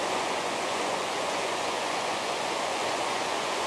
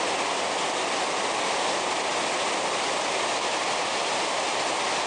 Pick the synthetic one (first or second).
first